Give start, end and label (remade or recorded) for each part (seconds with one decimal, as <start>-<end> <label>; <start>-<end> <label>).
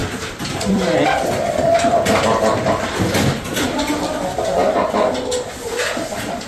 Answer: 0.0-3.9 remade; 3.9-6.5 recorded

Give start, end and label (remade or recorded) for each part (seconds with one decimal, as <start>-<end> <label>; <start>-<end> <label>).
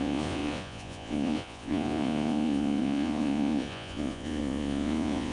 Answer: 0.0-5.3 remade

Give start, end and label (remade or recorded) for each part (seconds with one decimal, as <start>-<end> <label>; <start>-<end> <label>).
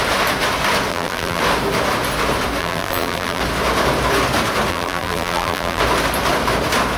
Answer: 0.0-0.9 recorded; 0.9-1.4 remade; 1.4-2.6 recorded; 2.6-3.4 remade; 3.4-4.7 recorded; 4.7-5.8 remade; 5.8-7.0 recorded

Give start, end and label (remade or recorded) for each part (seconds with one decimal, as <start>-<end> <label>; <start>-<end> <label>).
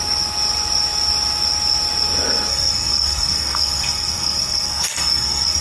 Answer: 0.0-2.5 recorded; 2.5-5.6 remade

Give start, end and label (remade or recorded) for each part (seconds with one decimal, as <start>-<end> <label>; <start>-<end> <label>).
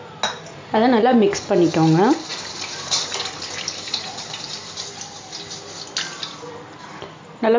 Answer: 0.0-7.6 recorded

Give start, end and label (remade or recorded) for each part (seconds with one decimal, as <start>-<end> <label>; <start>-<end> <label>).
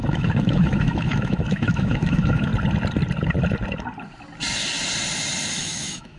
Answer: 0.0-2.5 remade; 2.5-5.6 recorded; 5.6-6.2 remade